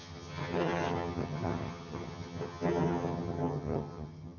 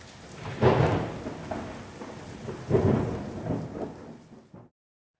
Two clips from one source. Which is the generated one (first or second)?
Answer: first